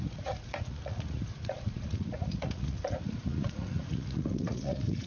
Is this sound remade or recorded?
remade